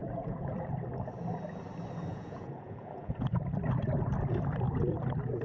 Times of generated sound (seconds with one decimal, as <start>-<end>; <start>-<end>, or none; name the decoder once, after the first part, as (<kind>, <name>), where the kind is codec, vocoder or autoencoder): 0.0-0.7 (vocoder, Vocos); 2.1-3.4